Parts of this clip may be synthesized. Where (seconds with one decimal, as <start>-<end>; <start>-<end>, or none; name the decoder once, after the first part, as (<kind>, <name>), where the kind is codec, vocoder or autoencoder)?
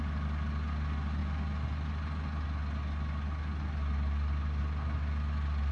none